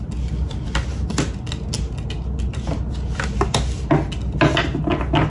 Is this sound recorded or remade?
recorded